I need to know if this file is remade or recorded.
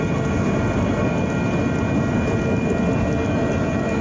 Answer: recorded